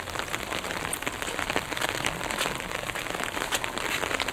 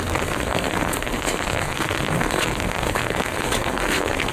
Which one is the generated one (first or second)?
second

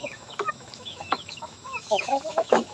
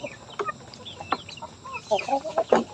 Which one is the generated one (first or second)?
first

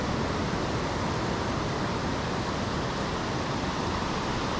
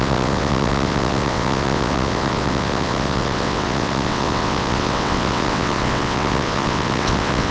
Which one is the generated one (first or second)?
second